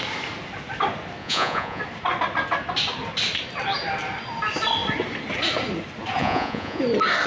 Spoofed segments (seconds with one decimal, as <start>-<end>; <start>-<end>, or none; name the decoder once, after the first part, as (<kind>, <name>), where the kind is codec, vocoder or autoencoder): 1.2-1.8 (vocoder, Vocos); 6.2-6.8